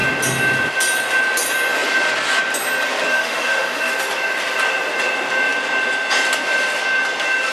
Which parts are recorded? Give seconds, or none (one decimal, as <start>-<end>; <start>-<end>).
0.0-3.1; 3.9-7.5